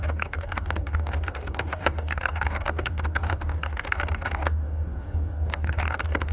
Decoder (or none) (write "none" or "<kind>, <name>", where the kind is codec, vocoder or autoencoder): codec, DAC